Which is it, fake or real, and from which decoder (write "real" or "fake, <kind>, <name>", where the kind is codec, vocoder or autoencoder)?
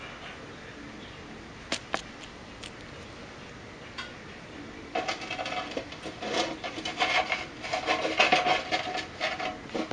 real